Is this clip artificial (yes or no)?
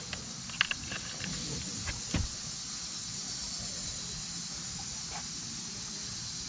no